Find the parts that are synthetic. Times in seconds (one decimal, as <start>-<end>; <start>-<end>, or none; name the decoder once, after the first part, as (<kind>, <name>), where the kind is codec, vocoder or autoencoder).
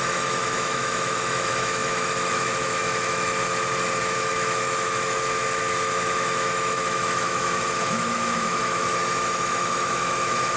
0.0-3.4 (autoencoder, DAC-VAE); 4.0-10.6